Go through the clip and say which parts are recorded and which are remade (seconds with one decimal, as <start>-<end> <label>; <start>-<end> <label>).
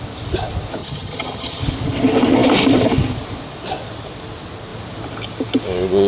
0.0-0.8 recorded; 0.8-1.6 remade; 1.6-6.1 recorded